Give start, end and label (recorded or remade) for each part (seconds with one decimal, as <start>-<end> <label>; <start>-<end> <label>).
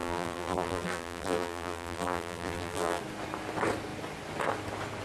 0.0-3.0 remade; 3.0-5.0 recorded